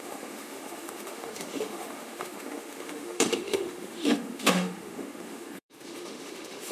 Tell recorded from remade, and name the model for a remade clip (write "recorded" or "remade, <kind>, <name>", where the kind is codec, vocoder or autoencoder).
remade, autoencoder, DAC-VAE